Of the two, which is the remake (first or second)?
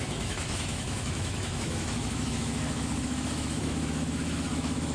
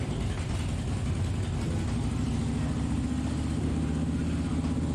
first